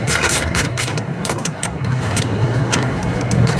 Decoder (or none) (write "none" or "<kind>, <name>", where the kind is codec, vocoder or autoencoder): codec, SNAC